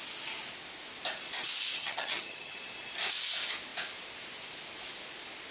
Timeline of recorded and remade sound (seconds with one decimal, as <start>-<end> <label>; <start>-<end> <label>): 0.0-1.8 recorded; 1.8-2.6 remade; 2.6-5.5 recorded